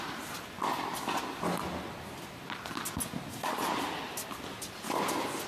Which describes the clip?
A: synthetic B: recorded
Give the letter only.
B